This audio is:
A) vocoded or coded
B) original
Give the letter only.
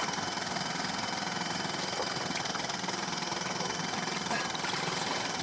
A